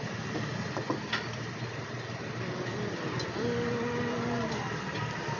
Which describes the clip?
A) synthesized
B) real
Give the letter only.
B